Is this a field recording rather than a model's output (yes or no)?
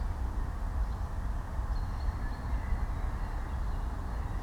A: yes